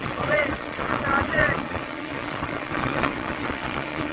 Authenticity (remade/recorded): remade